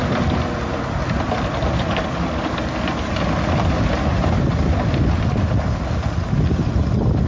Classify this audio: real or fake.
real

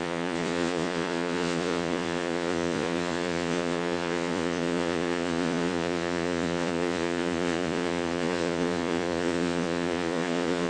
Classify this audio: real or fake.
fake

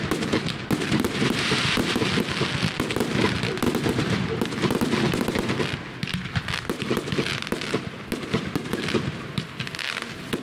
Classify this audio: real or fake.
real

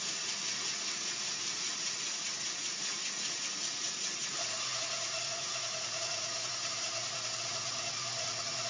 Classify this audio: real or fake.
fake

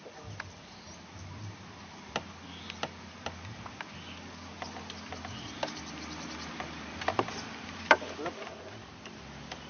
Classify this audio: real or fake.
real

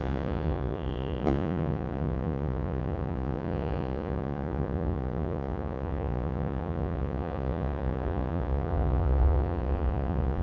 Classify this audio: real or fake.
fake